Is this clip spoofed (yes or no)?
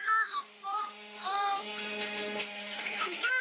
yes